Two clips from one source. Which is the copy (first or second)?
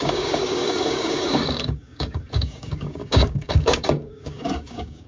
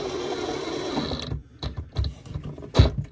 first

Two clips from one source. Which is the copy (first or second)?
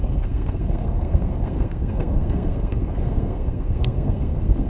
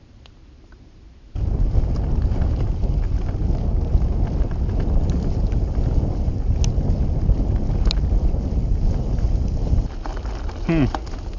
first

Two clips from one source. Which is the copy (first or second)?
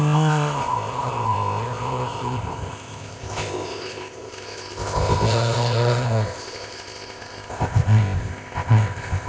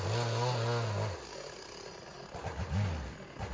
first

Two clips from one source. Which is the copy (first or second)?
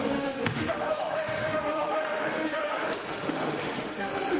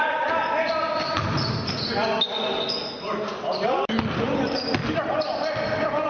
first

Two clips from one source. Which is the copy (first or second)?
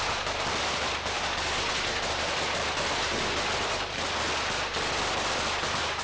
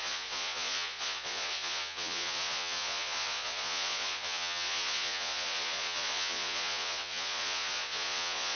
second